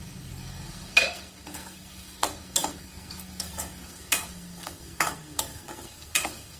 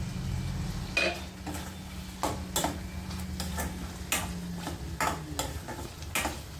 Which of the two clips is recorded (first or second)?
second